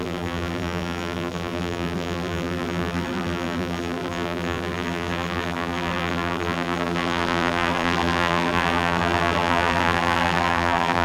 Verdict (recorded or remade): remade